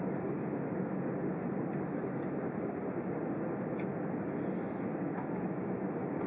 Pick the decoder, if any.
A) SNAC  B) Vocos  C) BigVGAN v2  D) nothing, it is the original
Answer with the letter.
D